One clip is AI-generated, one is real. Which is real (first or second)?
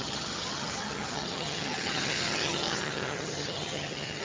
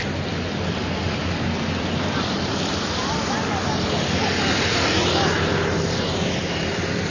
second